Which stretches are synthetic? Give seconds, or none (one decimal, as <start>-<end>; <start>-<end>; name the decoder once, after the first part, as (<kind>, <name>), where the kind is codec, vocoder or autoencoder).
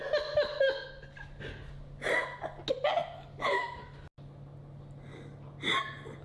none